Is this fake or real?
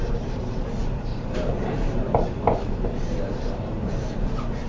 fake